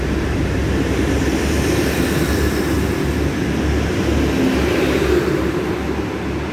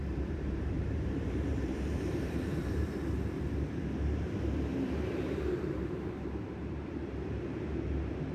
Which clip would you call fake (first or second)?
second